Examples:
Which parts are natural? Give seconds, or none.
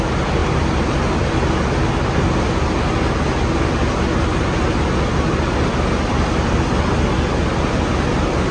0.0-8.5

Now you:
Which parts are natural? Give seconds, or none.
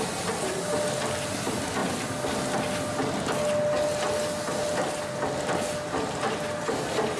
0.0-7.2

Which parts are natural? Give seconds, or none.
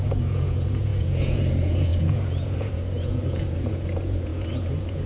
none